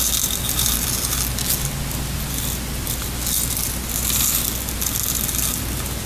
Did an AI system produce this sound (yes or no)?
no